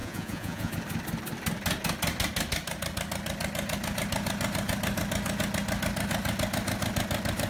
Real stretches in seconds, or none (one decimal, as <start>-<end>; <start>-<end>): 0.7-7.5